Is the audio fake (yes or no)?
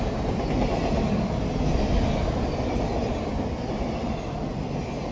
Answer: no